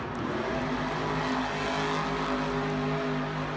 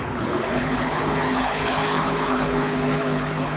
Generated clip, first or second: second